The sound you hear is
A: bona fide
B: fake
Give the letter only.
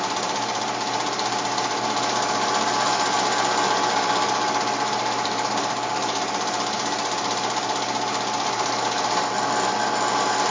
A